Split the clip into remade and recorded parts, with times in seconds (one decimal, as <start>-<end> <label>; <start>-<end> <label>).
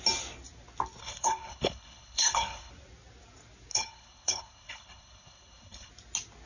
0.0-1.0 recorded; 1.0-2.7 remade; 2.7-3.7 recorded; 3.7-5.9 remade; 5.9-6.5 recorded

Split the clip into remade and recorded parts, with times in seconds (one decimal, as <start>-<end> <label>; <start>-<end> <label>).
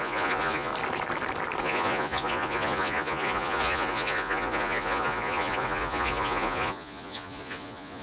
0.0-0.7 remade; 0.7-1.6 recorded; 1.6-8.0 remade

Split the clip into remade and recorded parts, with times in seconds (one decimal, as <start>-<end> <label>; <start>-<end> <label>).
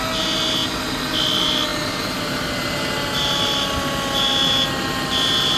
0.0-5.6 recorded